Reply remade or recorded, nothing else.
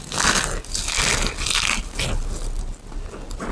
recorded